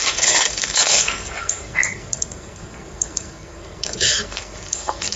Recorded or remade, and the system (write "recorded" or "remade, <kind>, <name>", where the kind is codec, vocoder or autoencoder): remade, codec, SNAC